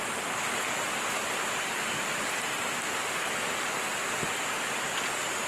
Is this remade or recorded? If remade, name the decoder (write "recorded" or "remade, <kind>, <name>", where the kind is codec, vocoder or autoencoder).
recorded